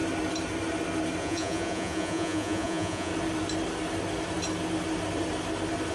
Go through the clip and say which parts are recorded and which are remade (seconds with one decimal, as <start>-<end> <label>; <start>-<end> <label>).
0.0-1.2 recorded; 1.2-3.1 remade; 3.1-5.9 recorded